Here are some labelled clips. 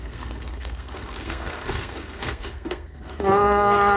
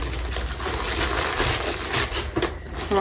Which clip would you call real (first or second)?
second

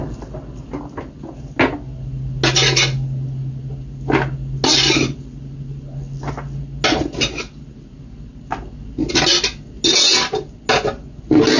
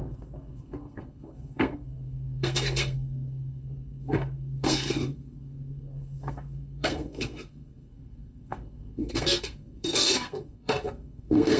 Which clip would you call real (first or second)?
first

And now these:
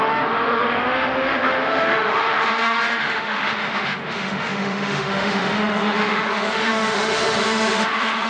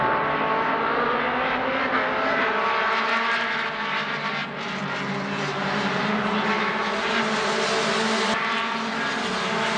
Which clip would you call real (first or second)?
second